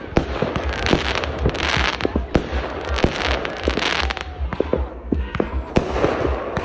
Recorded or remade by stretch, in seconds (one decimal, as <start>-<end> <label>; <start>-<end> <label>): 0.0-4.9 recorded; 4.9-5.7 remade; 5.7-6.6 recorded